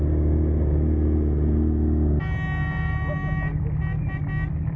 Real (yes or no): yes